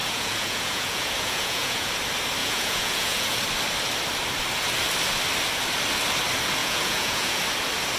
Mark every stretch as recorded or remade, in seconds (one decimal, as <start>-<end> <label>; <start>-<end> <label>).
0.0-1.9 remade; 1.9-2.4 recorded; 2.4-3.4 remade; 3.4-6.6 recorded; 6.6-7.4 remade; 7.4-8.0 recorded